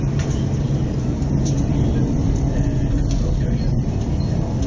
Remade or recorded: recorded